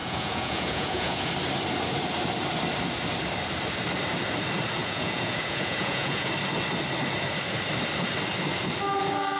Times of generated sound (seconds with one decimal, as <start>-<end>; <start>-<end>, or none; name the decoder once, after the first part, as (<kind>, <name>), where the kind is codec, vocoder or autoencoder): 0.0-1.3 (vocoder, Vocos); 4.8-6.3

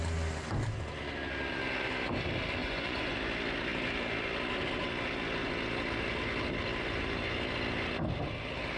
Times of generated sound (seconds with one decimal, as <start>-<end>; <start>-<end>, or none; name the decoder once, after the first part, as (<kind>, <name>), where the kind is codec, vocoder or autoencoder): 2.6-3.2 (vocoder, Vocos)

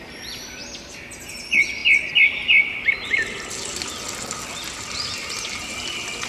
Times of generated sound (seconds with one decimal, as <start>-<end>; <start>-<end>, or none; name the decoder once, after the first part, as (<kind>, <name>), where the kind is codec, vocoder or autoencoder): none

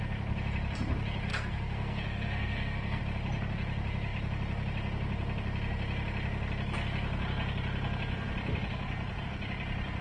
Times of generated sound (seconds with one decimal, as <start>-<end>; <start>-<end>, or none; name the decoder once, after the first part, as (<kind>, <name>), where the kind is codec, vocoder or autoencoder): 1.3-3.0 (codec, SNAC)

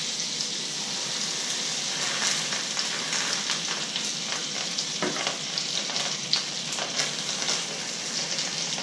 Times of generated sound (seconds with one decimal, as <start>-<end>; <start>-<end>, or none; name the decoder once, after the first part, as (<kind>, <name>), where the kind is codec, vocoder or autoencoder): 4.4-6.4 (vocoder, BigVGAN v2)

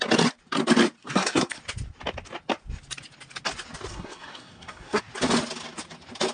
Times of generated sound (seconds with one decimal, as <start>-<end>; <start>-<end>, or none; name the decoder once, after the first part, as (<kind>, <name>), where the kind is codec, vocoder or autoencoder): 1.0-1.6 (codec, SNAC); 3.9-5.0

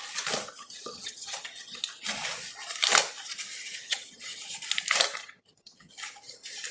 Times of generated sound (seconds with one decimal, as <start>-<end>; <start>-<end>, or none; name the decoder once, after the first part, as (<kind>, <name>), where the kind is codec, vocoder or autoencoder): 0.6-1.8 (vocoder, HiFi-GAN); 3.8-4.4; 5.2-5.9